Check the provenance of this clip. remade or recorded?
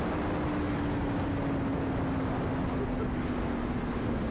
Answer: recorded